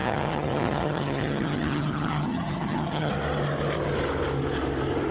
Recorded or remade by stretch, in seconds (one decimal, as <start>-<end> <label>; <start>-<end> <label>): 0.0-3.1 remade; 3.1-5.1 recorded

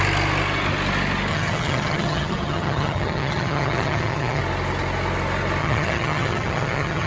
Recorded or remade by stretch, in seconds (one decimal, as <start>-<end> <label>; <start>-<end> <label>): 0.0-1.3 recorded; 1.3-4.4 remade; 4.4-5.6 recorded; 5.6-7.1 remade

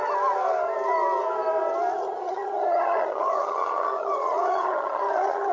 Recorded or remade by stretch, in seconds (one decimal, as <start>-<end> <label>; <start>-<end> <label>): 0.0-2.0 recorded; 2.0-5.5 remade

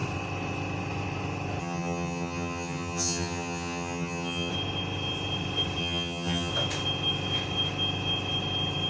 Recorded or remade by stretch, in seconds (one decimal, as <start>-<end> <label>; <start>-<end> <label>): 0.0-1.6 recorded; 1.6-4.5 remade; 4.5-5.8 recorded; 5.8-6.5 remade; 6.5-8.9 recorded

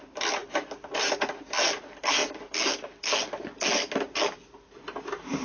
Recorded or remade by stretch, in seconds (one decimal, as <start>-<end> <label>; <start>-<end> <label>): 0.0-5.4 recorded

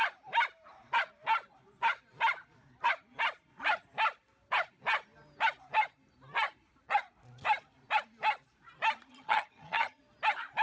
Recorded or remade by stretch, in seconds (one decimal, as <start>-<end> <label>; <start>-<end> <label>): 0.0-9.1 recorded; 9.1-10.0 remade; 10.0-10.6 recorded

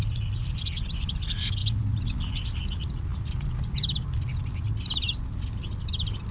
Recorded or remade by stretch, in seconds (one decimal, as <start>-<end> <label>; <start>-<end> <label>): 0.0-6.3 recorded

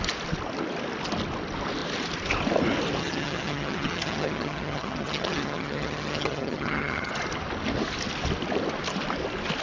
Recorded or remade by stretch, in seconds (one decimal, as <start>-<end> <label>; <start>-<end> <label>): 0.0-3.0 recorded; 3.0-7.1 remade; 7.1-9.6 recorded